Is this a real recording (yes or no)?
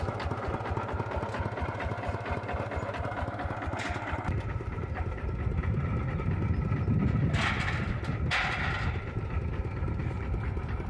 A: yes